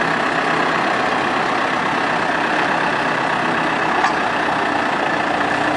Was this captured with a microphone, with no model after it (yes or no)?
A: yes